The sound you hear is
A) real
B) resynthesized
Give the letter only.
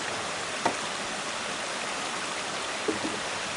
A